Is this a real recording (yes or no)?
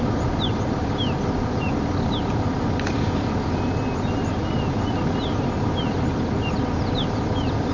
yes